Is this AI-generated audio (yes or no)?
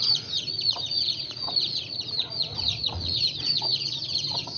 yes